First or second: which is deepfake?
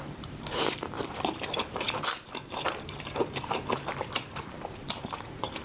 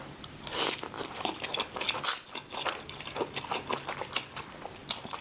first